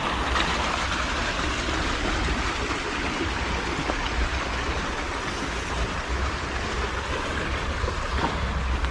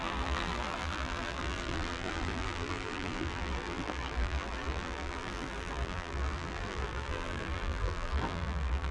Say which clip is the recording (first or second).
first